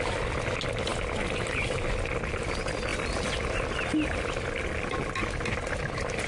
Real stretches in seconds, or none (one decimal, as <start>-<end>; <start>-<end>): 0.0-6.3